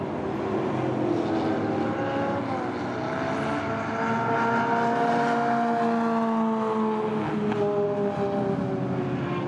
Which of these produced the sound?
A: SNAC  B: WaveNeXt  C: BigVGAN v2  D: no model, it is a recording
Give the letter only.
D